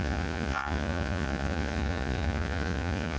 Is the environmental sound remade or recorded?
remade